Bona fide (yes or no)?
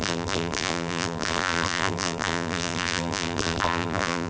no